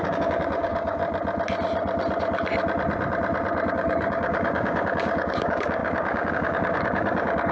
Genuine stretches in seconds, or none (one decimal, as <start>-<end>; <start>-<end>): 1.0-3.7